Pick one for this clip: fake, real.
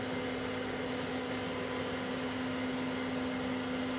real